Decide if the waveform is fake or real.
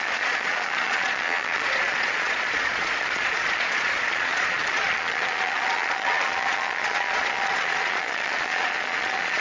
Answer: fake